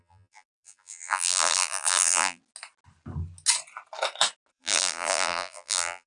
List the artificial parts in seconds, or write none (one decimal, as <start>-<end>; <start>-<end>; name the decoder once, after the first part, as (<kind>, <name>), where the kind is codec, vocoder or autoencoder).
0.0-2.4 (vocoder, BigVGAN v2); 4.5-6.1